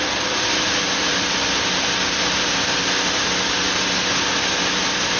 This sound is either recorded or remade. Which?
recorded